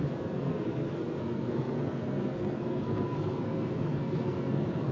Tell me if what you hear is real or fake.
fake